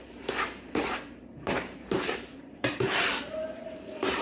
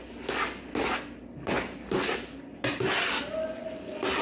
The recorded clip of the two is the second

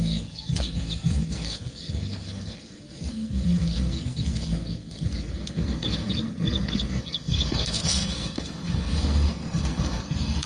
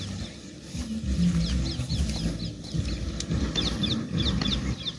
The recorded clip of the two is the second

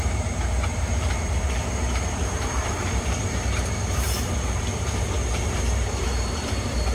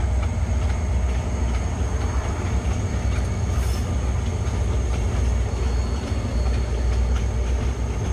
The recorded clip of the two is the second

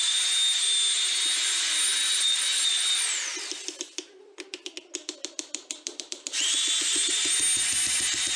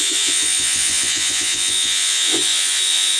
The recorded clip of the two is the first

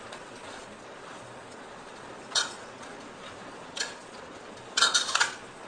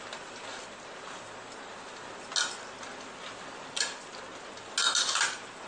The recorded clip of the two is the second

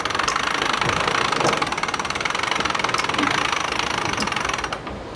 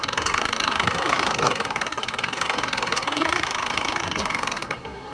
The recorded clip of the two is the first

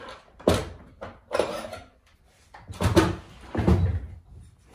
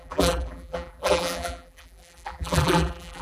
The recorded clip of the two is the first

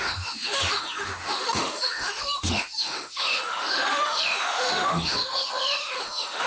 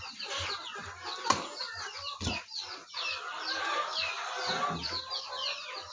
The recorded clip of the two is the second